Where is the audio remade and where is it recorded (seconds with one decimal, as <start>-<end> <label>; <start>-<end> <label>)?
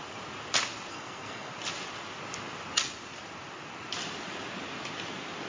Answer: 0.0-0.9 recorded; 0.9-1.5 remade; 1.5-5.5 recorded